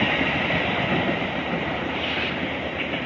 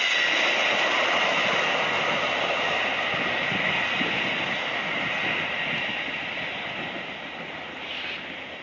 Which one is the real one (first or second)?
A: second